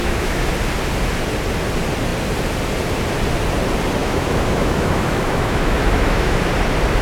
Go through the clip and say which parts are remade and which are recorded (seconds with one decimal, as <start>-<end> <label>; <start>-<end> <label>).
0.0-0.5 remade; 0.5-4.0 recorded; 4.0-6.5 remade; 6.5-7.0 recorded